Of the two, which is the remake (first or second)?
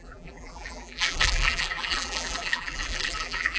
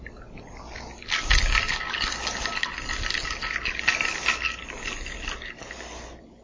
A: first